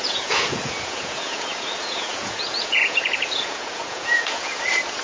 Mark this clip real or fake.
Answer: fake